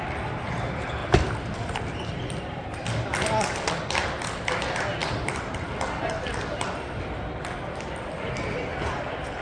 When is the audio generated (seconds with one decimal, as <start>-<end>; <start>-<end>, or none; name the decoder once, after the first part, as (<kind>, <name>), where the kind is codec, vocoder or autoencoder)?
1.0-2.8 (vocoder, BigVGAN v2); 5.0-5.7